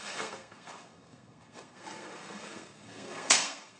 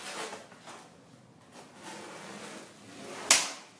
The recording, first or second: second